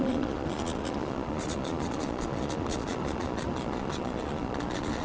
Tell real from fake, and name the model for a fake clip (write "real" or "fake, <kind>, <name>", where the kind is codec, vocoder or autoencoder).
fake, vocoder, Vocos